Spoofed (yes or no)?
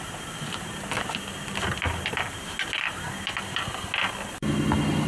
no